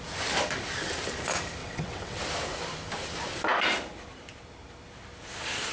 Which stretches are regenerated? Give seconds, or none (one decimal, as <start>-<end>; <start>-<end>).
1.6-2.2

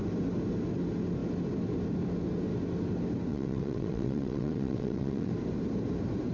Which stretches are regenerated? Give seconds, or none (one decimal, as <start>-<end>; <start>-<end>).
3.3-5.3

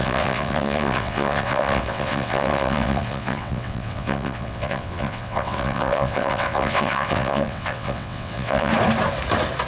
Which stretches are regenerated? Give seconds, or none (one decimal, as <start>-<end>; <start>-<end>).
0.0-8.7

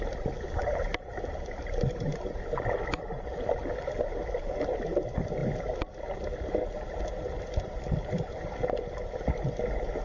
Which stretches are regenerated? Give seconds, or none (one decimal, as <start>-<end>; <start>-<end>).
none

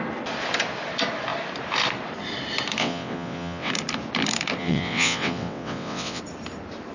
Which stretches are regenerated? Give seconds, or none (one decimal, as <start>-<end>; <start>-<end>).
2.8-3.7; 4.6-6.2

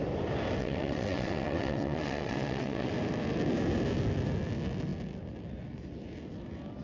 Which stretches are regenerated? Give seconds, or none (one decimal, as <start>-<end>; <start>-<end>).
0.6-2.9

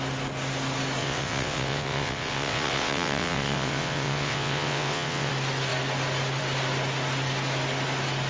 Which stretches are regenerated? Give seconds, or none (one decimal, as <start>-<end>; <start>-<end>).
1.0-5.3